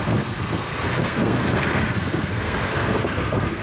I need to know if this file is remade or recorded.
remade